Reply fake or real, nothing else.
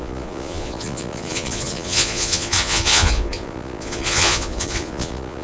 fake